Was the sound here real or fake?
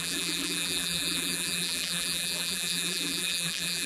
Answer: fake